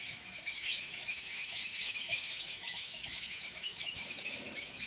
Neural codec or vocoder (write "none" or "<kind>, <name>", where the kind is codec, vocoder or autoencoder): autoencoder, DAC-VAE